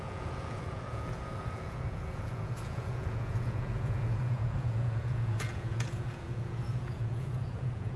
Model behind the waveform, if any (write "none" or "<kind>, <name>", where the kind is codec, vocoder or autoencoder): vocoder, Vocos